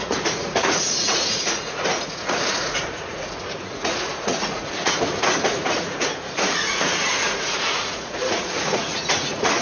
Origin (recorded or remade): remade